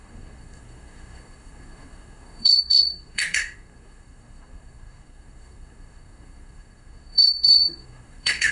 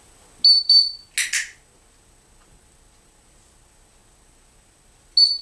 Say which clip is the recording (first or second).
second